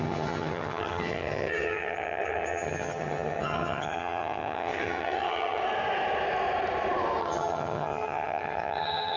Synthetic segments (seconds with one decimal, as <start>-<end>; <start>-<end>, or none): 0.0-5.6; 7.2-9.2